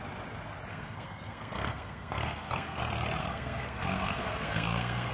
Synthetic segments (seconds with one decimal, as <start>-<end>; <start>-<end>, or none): 0.7-2.8; 3.2-5.1

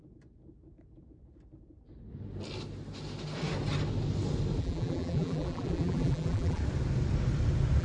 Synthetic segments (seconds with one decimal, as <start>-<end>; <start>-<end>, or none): 4.6-6.6